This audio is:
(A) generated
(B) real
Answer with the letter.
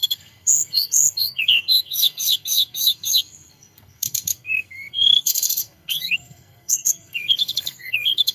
A